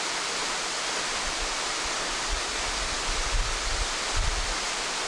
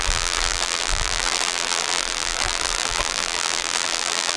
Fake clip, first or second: second